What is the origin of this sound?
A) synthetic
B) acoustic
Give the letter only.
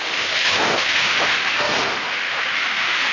A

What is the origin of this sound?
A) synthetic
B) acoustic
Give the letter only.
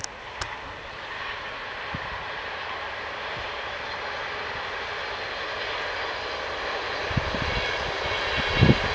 B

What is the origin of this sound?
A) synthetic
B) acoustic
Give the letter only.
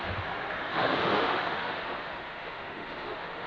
A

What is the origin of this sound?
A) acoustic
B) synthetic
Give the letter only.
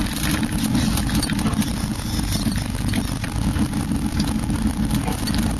A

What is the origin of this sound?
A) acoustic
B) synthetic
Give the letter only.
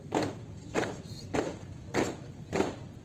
A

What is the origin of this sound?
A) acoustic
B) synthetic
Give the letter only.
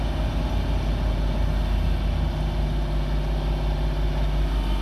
A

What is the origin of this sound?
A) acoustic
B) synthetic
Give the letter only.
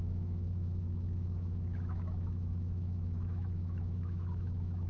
B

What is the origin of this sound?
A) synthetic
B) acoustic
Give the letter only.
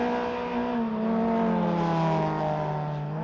B